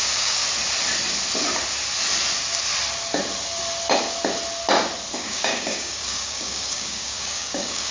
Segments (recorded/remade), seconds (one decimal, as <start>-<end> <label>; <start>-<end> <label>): 0.0-0.4 remade; 0.4-5.1 recorded; 5.1-7.9 remade